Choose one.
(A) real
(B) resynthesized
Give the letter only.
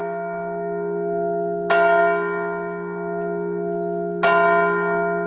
A